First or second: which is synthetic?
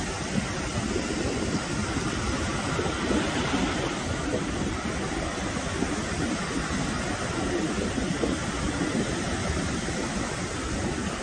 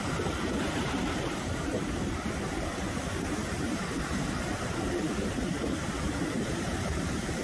second